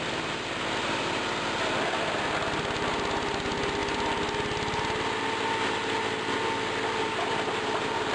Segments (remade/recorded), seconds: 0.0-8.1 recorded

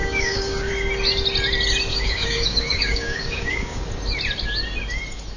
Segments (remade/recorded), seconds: 0.0-0.7 remade; 0.7-1.9 recorded; 1.9-3.8 remade; 3.8-5.4 recorded

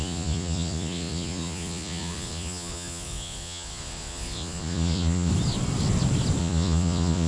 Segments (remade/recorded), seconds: 0.0-5.3 remade; 5.3-6.4 recorded; 6.4-7.3 remade

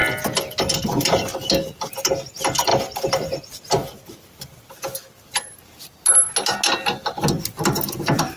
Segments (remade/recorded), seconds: 0.0-8.4 recorded

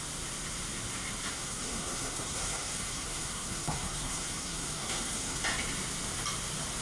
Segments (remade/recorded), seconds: 0.0-1.3 recorded; 1.3-5.4 remade; 5.4-6.8 recorded

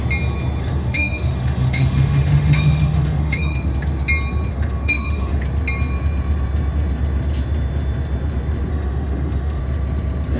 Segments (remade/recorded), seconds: 0.0-0.6 recorded; 0.6-3.7 remade; 3.7-4.5 recorded; 4.5-5.4 remade; 5.4-8.7 recorded; 8.7-9.6 remade; 9.6-10.4 recorded

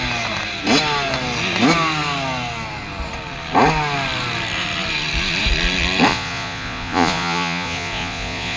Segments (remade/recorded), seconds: 0.0-6.1 recorded; 6.1-8.6 remade

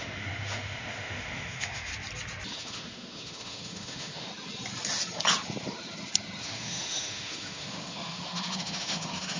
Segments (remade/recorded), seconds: 0.0-1.9 remade; 1.9-2.5 recorded; 2.5-4.3 remade; 4.3-6.4 recorded; 6.4-9.4 remade